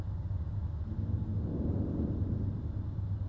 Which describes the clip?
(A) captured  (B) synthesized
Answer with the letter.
A